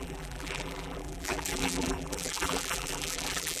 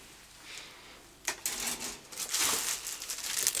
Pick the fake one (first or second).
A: first